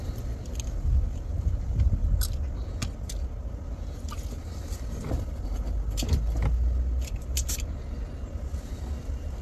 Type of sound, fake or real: real